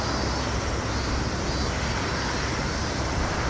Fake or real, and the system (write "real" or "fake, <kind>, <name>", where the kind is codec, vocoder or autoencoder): real